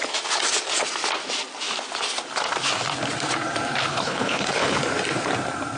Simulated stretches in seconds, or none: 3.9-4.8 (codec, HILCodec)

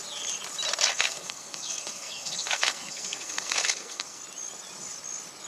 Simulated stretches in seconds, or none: 0.9-4.2 (codec, SNAC)

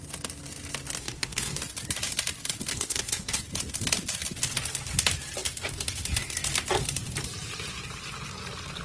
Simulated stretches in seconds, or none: 1.0-1.6 (codec, SNAC); 2.7-3.4

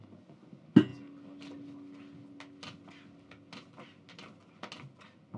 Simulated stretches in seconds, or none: none

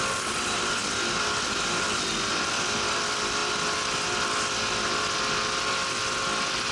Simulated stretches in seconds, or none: none

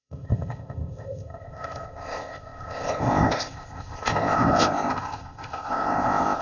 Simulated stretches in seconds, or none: 0.0-6.4 (codec, ZipCodec)

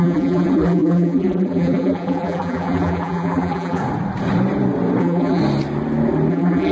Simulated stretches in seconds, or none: 0.0-3.8 (vocoder, BigVGAN v2); 5.0-5.4; 6.3-6.7

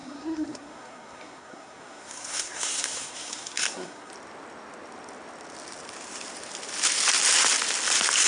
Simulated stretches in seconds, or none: 0.0-4.1 (codec, SNAC)